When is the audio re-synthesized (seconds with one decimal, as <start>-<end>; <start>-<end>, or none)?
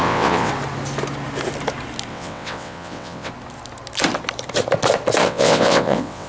0.0-0.5; 2.1-3.3; 5.2-6.3